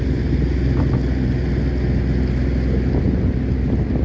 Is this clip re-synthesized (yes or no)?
no